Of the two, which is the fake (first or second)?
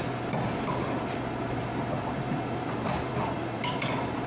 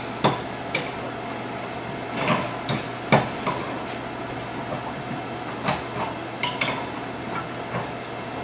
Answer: first